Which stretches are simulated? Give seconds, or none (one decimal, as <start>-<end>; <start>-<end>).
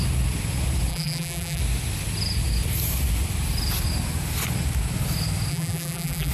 0.9-1.6; 5.5-6.3